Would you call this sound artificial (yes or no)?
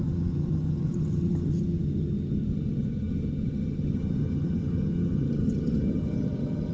yes